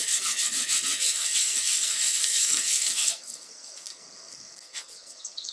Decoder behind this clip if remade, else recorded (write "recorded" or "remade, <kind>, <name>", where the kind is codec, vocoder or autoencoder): remade, codec, SNAC